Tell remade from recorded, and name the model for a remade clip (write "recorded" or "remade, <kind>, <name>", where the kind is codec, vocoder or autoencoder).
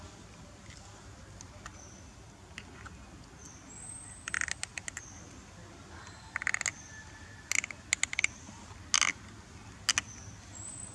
recorded